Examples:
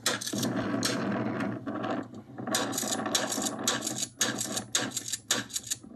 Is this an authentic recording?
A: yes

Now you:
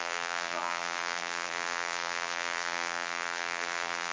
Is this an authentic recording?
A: no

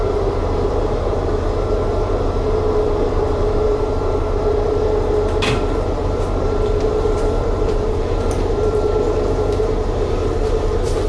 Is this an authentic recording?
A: no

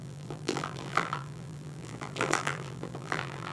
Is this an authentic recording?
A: no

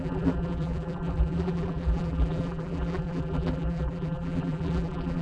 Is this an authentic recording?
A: no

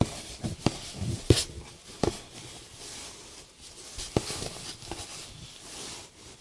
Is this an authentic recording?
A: yes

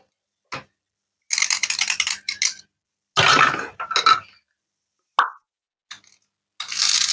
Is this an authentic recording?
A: yes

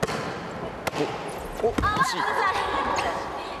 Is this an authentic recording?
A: yes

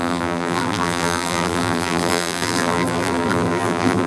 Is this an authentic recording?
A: no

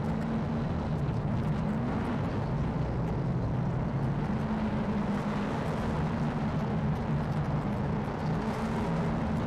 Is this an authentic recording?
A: yes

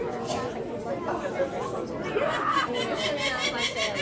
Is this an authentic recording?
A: yes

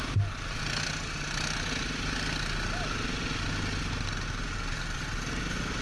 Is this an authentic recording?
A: yes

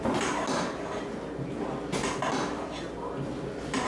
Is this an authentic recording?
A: yes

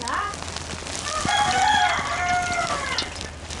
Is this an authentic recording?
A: yes